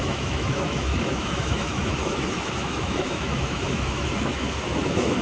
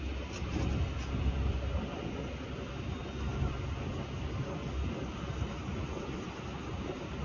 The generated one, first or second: first